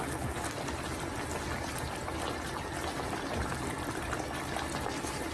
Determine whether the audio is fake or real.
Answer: real